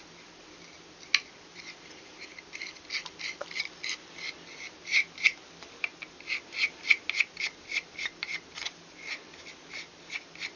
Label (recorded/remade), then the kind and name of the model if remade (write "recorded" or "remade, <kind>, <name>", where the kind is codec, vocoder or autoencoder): recorded